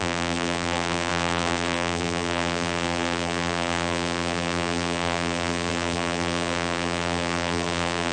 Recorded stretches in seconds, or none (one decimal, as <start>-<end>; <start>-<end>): none

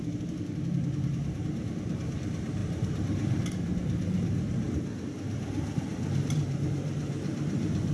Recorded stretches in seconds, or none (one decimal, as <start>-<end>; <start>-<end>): none

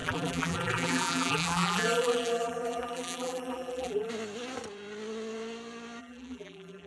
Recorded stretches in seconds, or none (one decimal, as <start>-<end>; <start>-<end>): 4.1-6.0

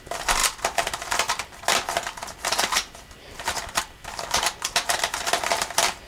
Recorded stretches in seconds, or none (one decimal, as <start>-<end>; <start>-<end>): 0.0-6.1

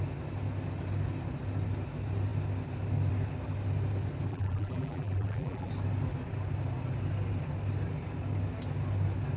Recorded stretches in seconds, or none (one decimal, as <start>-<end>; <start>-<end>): 0.0-4.3; 5.7-9.4

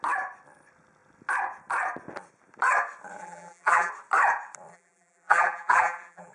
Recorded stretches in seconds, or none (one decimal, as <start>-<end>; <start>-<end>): 0.0-3.2; 3.9-4.7

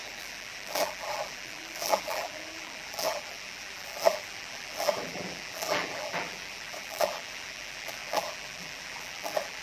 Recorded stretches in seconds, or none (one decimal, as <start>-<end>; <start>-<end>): none